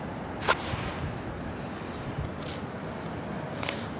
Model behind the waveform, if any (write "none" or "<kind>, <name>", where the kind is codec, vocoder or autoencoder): none